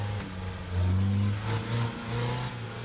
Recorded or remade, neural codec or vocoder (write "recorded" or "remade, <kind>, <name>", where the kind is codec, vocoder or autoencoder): recorded